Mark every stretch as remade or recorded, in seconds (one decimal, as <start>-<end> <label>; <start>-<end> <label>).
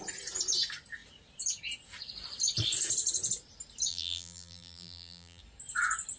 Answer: 0.0-3.9 recorded; 3.9-5.4 remade; 5.4-6.2 recorded